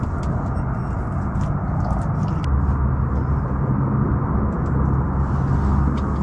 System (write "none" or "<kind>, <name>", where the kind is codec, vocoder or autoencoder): none